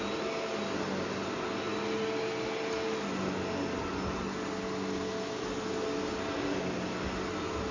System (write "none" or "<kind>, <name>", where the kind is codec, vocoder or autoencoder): none